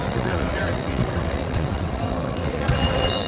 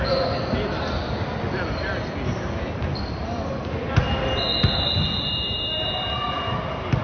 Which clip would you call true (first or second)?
second